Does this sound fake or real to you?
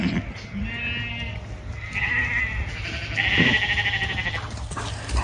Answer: real